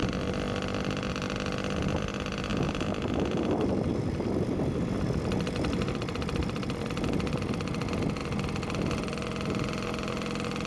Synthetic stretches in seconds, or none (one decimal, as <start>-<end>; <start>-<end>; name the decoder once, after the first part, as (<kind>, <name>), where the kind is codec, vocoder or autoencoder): 2.5-7.3 (vocoder, BigVGAN v2)